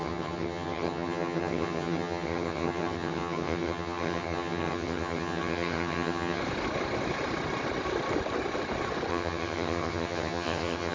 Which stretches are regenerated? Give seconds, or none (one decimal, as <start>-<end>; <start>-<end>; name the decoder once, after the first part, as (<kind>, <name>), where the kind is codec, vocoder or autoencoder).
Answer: 0.0-6.4 (vocoder, HiFi-GAN); 9.1-10.9